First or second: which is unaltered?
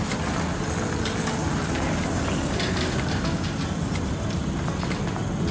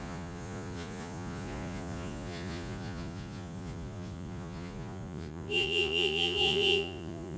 first